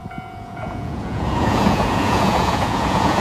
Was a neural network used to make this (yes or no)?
yes